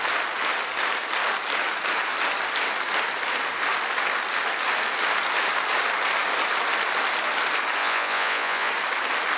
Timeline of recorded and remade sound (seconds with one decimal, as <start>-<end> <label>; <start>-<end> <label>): 0.0-7.8 recorded; 7.8-8.7 remade; 8.7-9.4 recorded